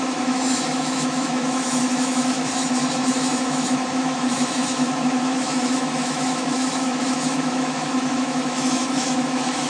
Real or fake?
fake